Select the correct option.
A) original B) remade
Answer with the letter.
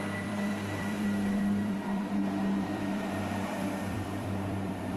B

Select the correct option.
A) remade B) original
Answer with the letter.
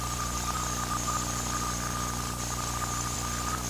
B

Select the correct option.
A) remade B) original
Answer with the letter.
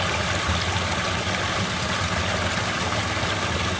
B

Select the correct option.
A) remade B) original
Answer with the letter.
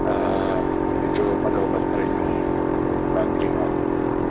B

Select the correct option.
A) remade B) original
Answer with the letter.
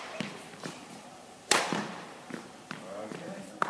A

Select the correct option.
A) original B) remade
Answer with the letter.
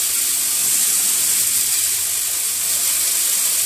A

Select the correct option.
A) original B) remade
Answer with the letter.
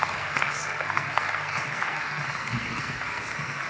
B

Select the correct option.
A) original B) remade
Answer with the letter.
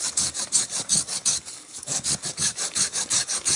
B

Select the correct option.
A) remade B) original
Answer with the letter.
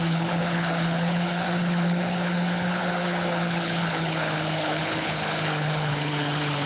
A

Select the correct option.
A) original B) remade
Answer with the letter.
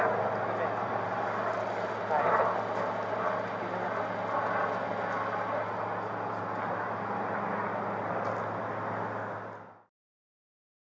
A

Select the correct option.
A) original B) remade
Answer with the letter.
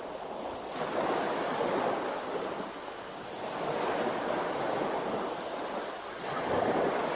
A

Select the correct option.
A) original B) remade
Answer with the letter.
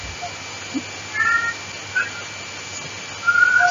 A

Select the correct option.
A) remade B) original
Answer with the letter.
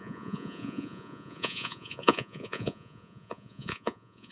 A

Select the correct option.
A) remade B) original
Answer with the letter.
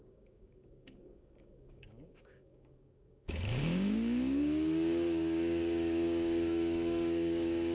A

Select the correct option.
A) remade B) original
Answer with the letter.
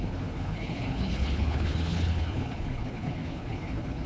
A